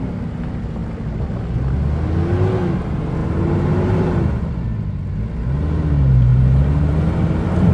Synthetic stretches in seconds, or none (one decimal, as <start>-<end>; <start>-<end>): 3.2-4.5